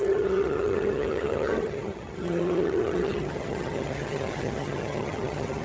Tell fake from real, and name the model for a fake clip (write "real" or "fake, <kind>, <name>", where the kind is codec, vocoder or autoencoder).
fake, vocoder, HiFi-GAN